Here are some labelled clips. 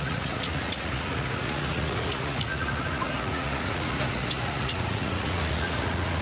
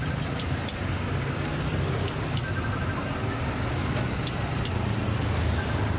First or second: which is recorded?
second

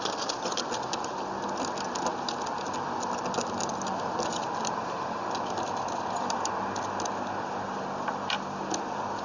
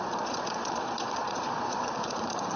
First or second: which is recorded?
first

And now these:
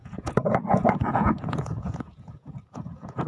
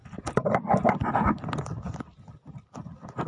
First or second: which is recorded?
second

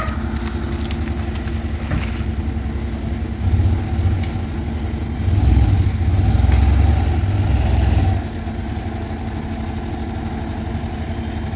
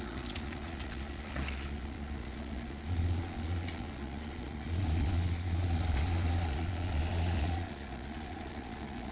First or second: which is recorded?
first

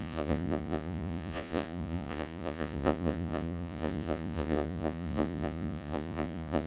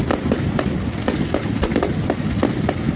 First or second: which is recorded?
second